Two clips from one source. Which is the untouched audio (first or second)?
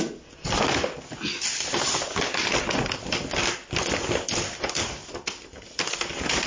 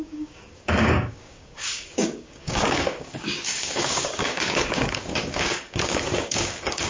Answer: first